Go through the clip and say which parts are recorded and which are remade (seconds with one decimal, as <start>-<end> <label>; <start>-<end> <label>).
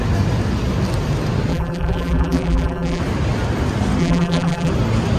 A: 0.0-1.5 recorded; 1.5-3.0 remade; 3.0-4.0 recorded; 4.0-4.7 remade; 4.7-5.2 recorded